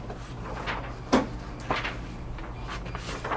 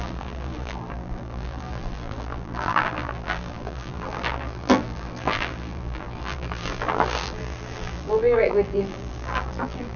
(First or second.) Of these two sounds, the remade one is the second